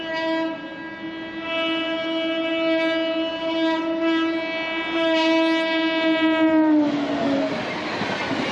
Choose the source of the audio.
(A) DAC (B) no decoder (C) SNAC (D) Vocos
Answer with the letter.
B